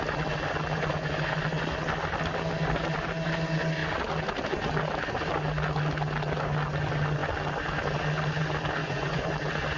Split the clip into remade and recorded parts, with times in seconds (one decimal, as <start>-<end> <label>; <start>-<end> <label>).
0.0-8.8 recorded; 8.8-9.3 remade; 9.3-9.8 recorded